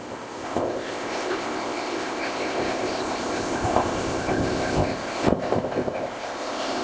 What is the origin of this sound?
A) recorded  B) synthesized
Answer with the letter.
B